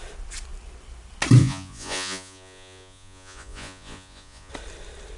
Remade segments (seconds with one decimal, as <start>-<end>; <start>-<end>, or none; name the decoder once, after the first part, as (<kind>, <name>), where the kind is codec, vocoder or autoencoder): 1.4-4.5 (vocoder, Vocos)